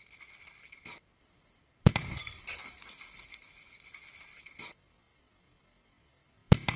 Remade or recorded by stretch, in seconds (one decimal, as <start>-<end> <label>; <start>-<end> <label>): 0.0-6.8 recorded